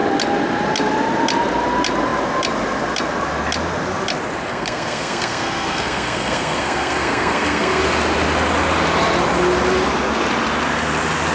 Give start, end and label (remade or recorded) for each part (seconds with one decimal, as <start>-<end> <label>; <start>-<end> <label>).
0.0-4.5 recorded; 4.5-7.8 remade; 7.8-11.3 recorded

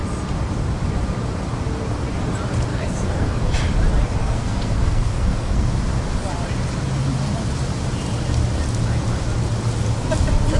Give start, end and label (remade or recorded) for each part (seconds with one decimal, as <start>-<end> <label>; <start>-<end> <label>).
0.0-2.7 recorded; 2.7-3.4 remade; 3.4-4.2 recorded; 4.2-5.7 remade; 5.7-10.6 recorded

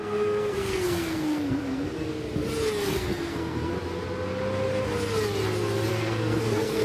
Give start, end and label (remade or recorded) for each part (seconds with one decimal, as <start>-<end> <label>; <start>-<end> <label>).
0.0-2.1 remade; 2.1-2.9 recorded; 2.9-3.7 remade; 3.7-5.9 recorded; 5.9-6.8 remade

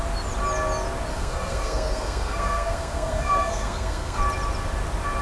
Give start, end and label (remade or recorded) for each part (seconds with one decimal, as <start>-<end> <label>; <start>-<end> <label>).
0.0-1.1 recorded; 1.1-4.2 remade; 4.2-5.2 recorded

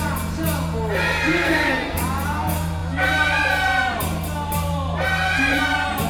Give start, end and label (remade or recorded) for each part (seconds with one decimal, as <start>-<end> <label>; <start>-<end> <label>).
0.0-1.3 recorded; 1.3-2.0 remade; 2.0-6.1 recorded

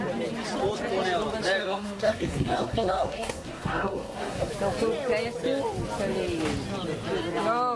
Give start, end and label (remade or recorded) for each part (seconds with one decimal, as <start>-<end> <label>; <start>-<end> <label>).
0.0-1.6 recorded; 1.6-4.5 remade; 4.5-7.8 recorded

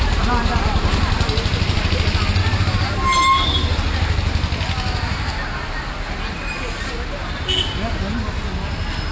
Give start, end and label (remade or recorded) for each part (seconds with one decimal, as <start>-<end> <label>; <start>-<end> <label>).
0.0-9.1 recorded